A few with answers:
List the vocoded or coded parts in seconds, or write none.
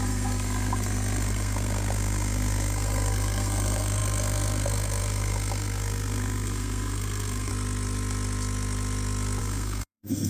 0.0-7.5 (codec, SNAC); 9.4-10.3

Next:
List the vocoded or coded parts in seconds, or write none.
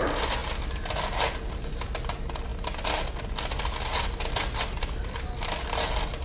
none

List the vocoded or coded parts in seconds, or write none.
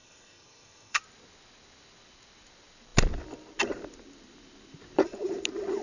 0.0-1.0 (codec, SNAC)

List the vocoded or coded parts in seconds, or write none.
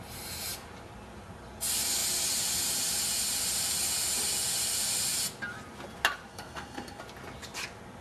6.3-7.0 (codec, SNAC)